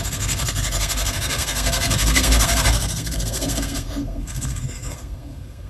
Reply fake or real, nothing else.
fake